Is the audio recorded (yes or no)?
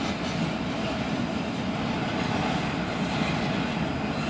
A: yes